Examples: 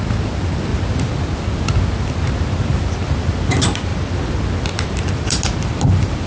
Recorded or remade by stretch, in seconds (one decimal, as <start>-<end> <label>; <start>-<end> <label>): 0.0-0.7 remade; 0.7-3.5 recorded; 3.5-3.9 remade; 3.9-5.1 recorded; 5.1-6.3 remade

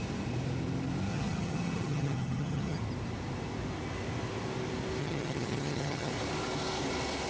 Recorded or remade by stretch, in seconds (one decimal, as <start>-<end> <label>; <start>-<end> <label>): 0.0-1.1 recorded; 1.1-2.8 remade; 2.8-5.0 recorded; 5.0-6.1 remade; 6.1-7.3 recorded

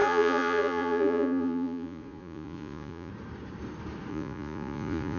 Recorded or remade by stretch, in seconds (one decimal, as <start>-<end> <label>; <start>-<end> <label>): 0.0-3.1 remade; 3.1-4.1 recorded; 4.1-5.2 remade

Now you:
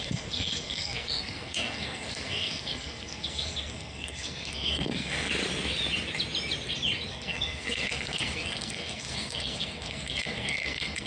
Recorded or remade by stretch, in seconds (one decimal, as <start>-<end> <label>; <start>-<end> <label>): 0.0-5.3 remade; 5.3-7.1 recorded; 7.1-11.1 remade